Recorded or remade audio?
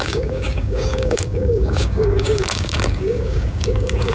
remade